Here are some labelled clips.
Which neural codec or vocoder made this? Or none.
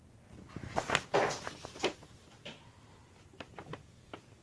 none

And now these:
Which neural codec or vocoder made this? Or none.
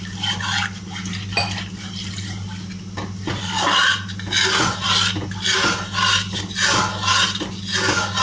none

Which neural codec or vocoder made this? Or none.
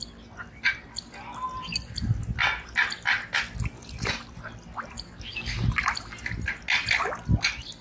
none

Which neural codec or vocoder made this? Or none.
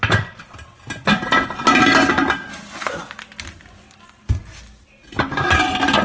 none